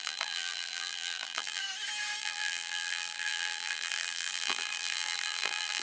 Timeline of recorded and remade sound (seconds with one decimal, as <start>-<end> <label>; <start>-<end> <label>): 0.0-1.6 remade; 1.6-2.2 recorded; 2.2-5.8 remade